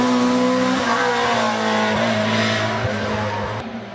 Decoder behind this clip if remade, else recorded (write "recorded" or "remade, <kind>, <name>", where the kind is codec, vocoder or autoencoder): recorded